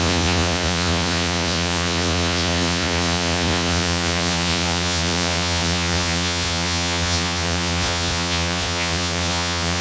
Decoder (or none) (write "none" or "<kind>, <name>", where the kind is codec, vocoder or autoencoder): vocoder, Vocos